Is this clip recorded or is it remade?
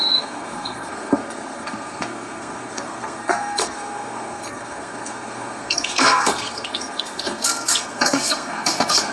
remade